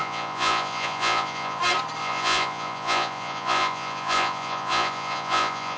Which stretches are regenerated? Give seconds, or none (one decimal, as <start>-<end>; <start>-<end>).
0.0-1.6; 2.0-5.8